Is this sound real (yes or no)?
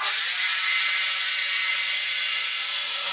no